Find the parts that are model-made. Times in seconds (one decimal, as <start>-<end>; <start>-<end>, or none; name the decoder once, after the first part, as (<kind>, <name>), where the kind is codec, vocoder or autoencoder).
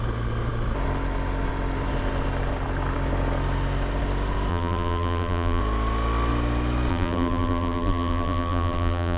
4.5-5.6 (vocoder, BigVGAN v2); 6.9-9.2